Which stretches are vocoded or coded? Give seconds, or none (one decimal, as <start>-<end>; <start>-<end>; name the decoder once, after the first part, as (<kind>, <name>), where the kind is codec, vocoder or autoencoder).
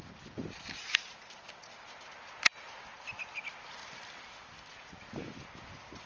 none